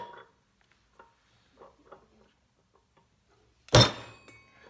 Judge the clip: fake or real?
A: real